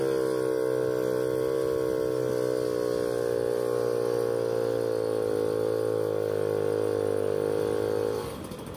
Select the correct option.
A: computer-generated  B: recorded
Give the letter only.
B